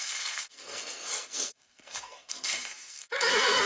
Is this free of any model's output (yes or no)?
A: no